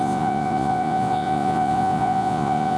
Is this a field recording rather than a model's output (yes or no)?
no